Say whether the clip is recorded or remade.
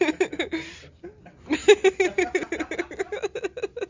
recorded